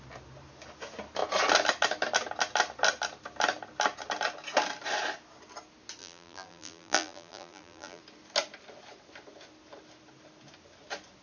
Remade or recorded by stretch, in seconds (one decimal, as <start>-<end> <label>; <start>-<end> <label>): 0.0-6.0 recorded; 6.0-8.0 remade; 8.0-11.2 recorded